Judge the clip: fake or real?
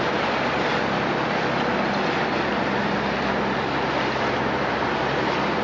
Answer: real